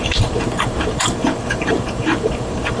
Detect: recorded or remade remade